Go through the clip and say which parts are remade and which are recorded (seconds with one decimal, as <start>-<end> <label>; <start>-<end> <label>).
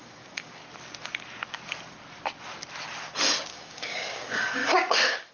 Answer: 0.0-0.6 remade; 0.6-3.5 recorded; 3.5-5.3 remade